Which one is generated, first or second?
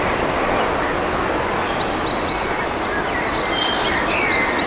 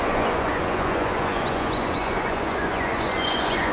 second